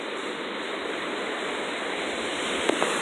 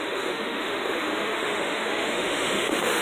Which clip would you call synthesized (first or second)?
second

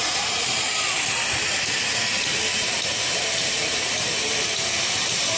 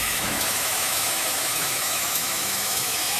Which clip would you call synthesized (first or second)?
second